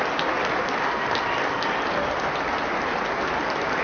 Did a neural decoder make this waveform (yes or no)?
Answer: no